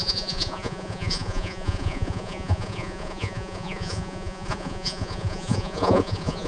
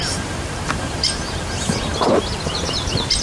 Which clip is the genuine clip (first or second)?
second